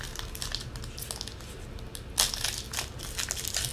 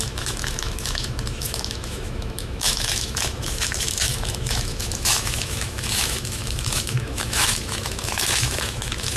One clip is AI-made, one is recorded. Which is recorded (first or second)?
first